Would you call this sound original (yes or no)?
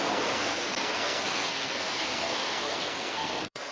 no